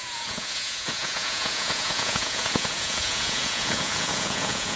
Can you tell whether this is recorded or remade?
remade